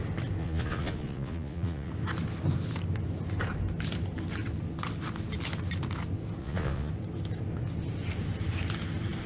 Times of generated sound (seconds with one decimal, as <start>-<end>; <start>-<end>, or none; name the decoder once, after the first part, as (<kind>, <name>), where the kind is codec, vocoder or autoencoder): 0.4-1.9 (vocoder, Vocos); 6.4-6.9